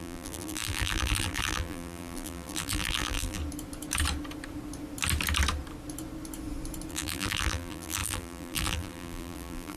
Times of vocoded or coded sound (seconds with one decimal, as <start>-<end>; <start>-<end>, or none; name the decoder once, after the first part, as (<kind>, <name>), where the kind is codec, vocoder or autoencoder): 0.0-3.4 (vocoder, BigVGAN v2); 6.9-9.8